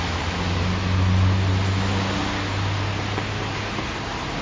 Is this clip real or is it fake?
real